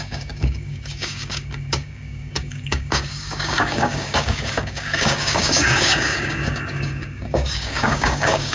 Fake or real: fake